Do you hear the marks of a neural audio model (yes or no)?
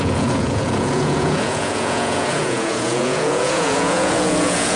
yes